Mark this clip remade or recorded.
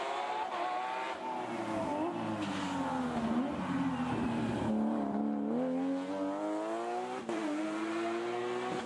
recorded